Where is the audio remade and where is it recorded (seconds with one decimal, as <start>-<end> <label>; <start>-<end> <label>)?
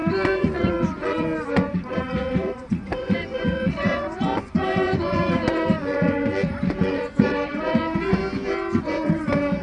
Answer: 0.0-8.2 remade; 8.2-8.8 recorded; 8.8-9.6 remade